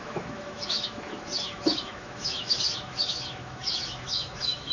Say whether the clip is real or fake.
fake